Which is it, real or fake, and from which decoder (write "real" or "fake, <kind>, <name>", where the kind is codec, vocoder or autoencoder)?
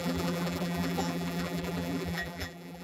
fake, vocoder, BigVGAN v2